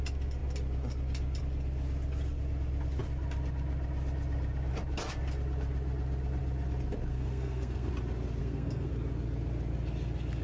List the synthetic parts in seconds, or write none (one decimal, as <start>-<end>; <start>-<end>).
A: 7.1-7.9; 8.4-8.9